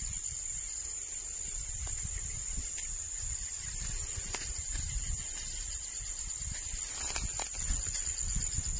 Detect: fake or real real